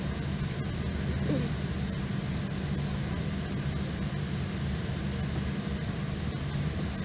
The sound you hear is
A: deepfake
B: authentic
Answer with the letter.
B